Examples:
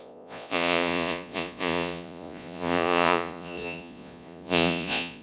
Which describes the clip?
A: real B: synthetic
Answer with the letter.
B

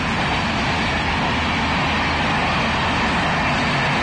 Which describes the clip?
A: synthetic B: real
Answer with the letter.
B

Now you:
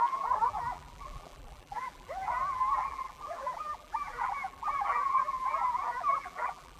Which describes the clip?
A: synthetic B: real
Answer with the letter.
A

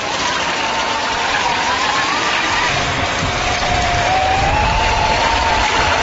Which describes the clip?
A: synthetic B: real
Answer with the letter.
B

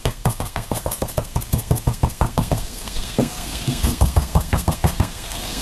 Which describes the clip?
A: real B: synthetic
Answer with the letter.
B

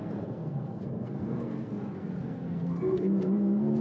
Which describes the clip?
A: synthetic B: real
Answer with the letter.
A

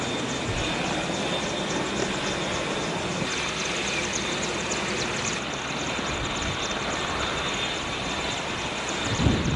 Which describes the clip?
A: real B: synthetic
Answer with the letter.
A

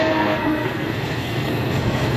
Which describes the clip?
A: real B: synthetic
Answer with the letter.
B